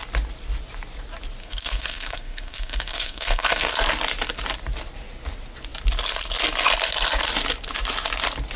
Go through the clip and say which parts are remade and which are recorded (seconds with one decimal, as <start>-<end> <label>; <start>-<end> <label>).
0.0-1.4 recorded; 1.4-3.7 remade; 3.7-8.6 recorded